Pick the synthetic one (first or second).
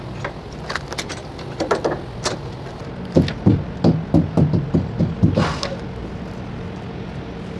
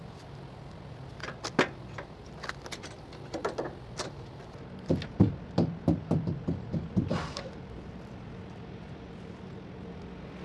second